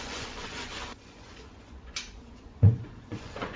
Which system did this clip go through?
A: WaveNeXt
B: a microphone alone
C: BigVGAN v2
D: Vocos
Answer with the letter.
D